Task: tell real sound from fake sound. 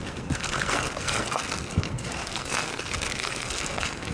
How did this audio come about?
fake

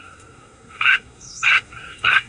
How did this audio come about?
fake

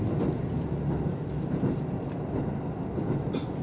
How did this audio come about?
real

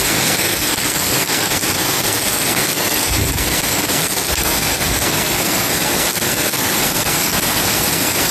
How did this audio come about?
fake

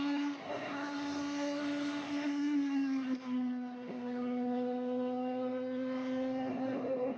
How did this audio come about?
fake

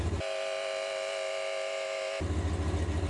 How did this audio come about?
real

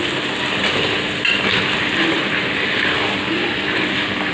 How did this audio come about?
real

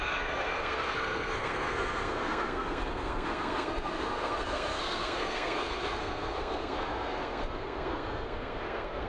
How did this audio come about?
fake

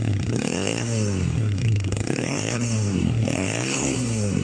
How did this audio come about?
fake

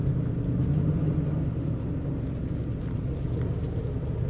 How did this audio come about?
real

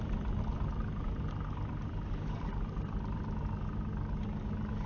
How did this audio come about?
real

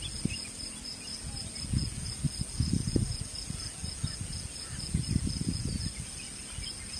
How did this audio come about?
real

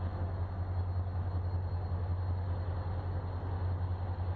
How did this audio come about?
real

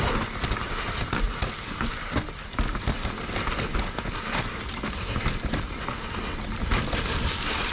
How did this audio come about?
real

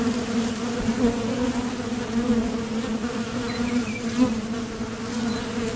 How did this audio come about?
real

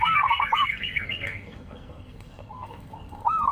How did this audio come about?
fake